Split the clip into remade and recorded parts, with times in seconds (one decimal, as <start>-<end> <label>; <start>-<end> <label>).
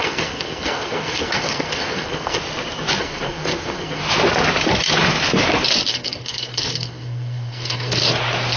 0.0-2.4 remade; 2.4-3.0 recorded; 3.0-4.0 remade; 4.0-5.9 recorded; 5.9-8.0 remade; 8.0-8.6 recorded